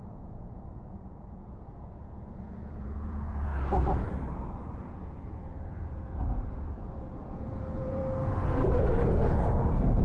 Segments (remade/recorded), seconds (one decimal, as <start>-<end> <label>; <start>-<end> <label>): 0.0-3.5 remade; 3.5-4.9 recorded; 4.9-8.0 remade; 8.0-10.0 recorded